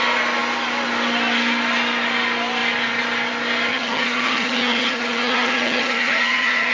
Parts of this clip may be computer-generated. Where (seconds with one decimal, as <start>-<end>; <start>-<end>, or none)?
3.7-6.7